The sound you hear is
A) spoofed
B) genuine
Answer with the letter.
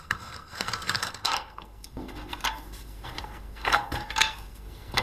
A